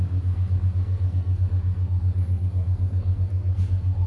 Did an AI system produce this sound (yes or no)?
yes